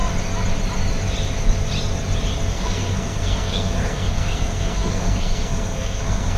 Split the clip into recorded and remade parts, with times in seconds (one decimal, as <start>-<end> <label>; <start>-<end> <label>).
0.0-2.5 recorded; 2.5-6.4 remade